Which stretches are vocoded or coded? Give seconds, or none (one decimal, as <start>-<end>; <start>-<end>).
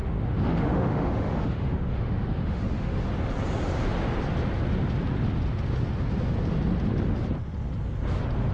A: 0.0-3.0